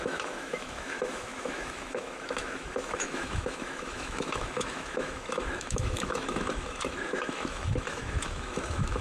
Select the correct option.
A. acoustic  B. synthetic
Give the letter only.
B